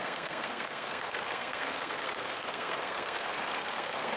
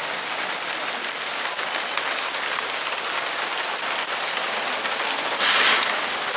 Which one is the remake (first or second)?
first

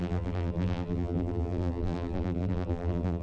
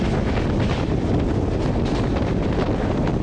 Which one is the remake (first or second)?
first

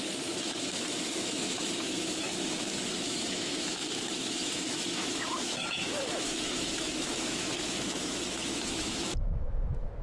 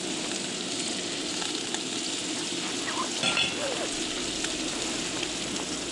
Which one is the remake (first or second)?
first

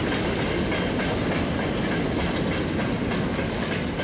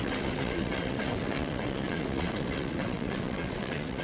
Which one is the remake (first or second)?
second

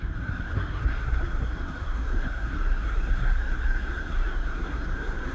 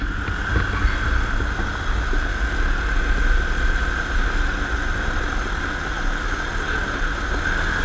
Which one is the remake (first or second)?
first